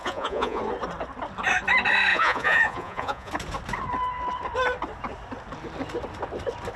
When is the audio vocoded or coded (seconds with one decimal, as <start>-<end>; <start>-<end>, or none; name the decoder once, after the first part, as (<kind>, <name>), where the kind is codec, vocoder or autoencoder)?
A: 0.0-0.6 (vocoder, Vocos); 2.1-3.3